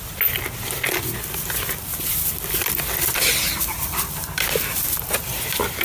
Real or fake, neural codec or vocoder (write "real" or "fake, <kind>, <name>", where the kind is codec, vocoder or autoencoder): real